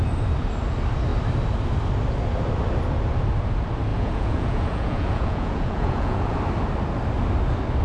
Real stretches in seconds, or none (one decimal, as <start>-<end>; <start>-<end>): 0.0-3.9; 6.4-7.8